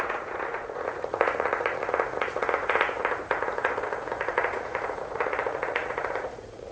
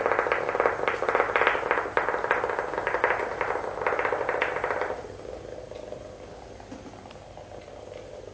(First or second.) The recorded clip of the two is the second